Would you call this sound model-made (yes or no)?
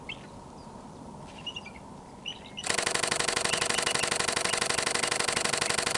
no